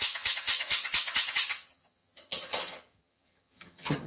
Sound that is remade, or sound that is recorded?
remade